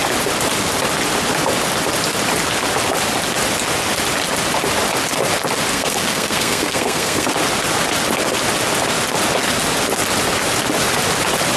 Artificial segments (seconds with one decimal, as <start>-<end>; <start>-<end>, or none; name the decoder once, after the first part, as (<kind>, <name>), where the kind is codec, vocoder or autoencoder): 5.7-7.3 (codec, SNAC)